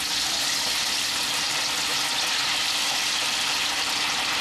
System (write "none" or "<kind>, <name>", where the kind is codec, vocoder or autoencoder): none